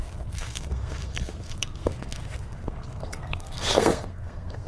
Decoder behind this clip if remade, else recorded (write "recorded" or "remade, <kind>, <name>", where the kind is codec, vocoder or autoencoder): remade, codec, SNAC